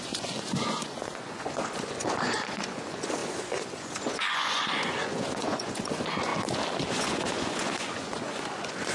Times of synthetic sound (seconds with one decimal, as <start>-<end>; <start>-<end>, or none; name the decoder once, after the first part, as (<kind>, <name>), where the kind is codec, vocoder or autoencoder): 0.0-6.3 (vocoder, Vocos); 6.9-8.9